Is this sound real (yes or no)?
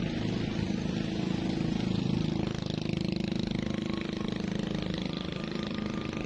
yes